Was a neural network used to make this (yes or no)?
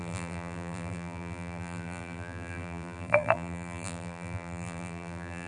yes